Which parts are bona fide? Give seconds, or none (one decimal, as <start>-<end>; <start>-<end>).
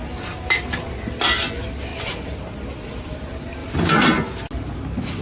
0.0-5.2